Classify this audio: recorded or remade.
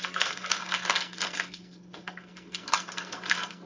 remade